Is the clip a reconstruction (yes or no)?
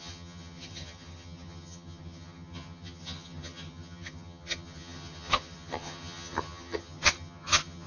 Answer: yes